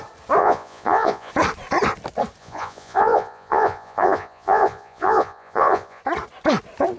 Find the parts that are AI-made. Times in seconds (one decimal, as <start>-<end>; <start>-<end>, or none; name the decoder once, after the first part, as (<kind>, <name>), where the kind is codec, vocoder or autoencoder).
0.4-1.3 (vocoder, Vocos); 2.4-6.0